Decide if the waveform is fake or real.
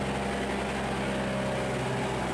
real